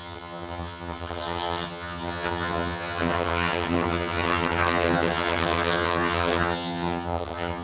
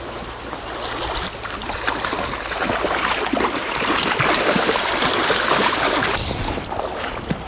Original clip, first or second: second